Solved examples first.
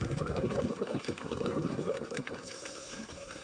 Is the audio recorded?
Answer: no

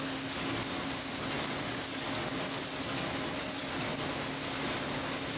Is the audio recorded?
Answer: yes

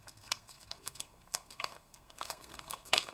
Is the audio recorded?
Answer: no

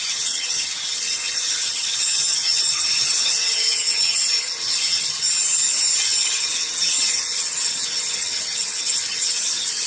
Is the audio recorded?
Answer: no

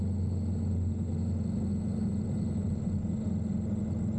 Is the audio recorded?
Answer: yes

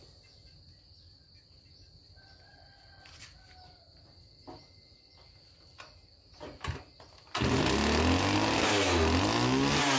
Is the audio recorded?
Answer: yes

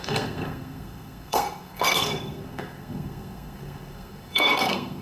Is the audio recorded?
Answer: no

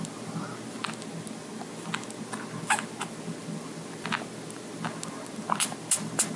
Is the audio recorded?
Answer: yes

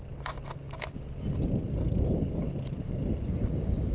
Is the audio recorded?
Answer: yes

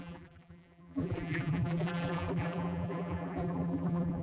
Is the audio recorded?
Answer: no